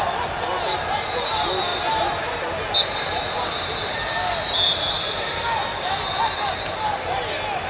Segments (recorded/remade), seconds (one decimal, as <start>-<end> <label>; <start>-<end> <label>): 0.0-7.7 recorded